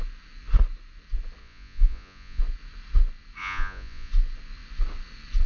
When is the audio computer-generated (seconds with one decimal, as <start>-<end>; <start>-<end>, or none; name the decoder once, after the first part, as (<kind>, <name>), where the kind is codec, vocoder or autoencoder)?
1.4-2.4 (vocoder, Vocos); 3.4-4.1